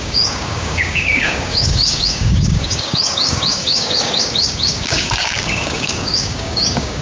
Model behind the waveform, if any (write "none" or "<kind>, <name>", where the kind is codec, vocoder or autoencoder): codec, DAC